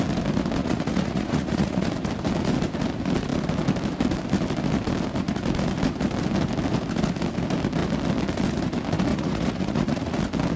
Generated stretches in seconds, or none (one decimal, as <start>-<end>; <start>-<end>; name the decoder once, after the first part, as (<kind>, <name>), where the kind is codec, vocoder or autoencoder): 0.6-1.9 (vocoder, Vocos); 9.1-10.2